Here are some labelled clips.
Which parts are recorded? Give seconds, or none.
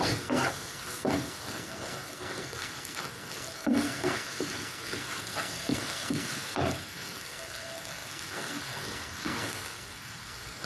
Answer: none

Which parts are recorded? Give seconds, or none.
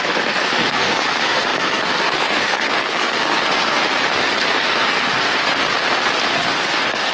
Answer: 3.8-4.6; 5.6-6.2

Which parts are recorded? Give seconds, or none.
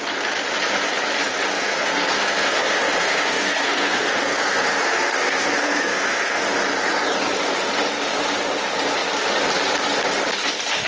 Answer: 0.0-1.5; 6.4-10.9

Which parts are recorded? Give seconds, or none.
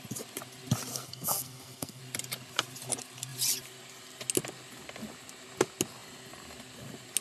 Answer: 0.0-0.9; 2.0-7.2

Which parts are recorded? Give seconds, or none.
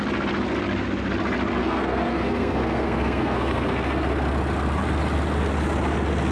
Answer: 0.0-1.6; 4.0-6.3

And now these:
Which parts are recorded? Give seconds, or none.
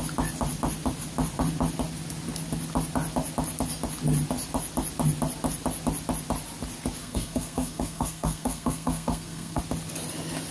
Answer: 0.0-7.0; 9.6-10.5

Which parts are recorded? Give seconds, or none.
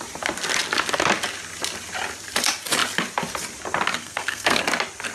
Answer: 0.0-4.0; 4.6-5.1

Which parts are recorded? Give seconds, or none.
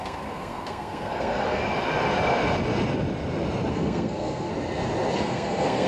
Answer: 1.6-3.7; 4.5-5.2